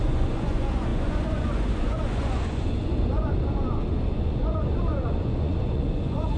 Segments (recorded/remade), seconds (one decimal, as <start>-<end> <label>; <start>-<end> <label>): 0.0-6.4 remade